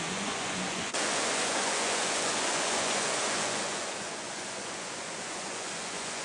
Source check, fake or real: fake